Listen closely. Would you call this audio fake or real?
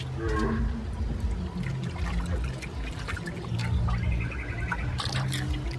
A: real